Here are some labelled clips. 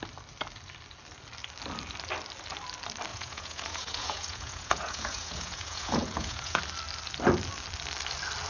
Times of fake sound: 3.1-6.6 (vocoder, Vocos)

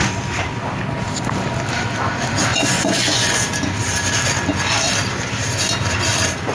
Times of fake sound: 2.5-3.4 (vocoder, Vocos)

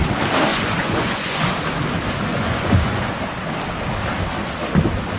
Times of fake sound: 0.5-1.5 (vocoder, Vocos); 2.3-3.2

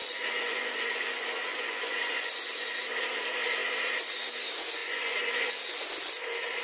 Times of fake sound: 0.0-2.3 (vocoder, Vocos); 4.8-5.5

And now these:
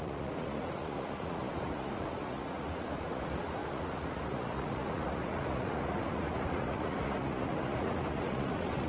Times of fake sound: 0.0-8.9 (vocoder, Vocos)